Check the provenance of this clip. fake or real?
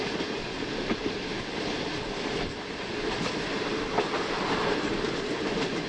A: real